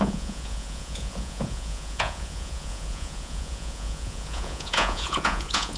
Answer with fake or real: fake